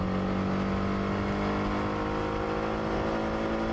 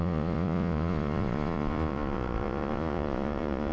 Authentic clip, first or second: first